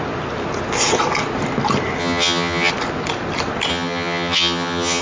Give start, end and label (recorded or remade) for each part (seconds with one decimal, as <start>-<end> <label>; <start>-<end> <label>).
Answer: 0.0-2.0 recorded; 2.0-2.7 remade; 2.7-3.7 recorded; 3.7-5.0 remade